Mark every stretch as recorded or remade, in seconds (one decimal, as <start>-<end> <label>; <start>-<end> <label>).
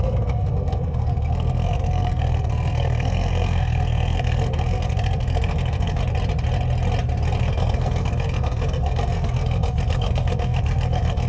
0.0-6.0 remade; 6.0-7.4 recorded; 7.4-11.3 remade